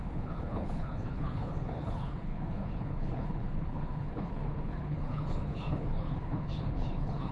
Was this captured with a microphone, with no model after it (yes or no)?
no